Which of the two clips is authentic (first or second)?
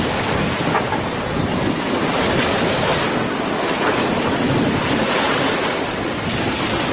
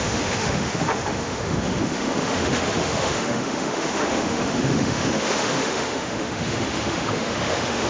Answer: first